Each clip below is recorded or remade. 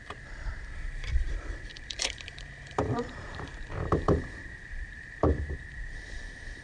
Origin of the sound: remade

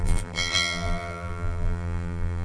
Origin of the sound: remade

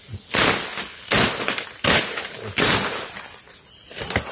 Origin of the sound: recorded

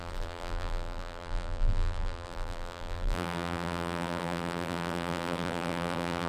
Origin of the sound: remade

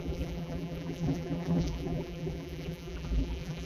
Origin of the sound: remade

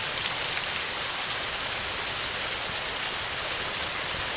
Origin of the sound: remade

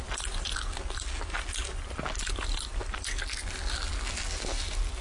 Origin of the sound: recorded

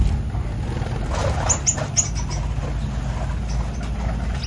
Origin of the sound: recorded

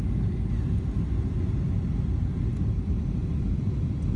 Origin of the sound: recorded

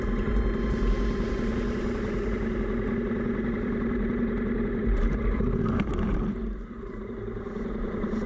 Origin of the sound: remade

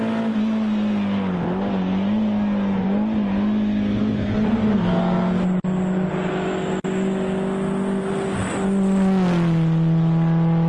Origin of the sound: recorded